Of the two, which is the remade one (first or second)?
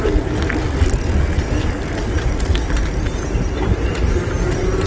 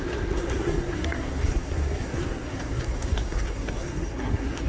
second